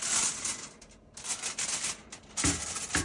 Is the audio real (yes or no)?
yes